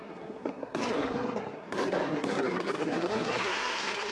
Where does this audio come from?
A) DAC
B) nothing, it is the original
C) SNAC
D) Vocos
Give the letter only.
C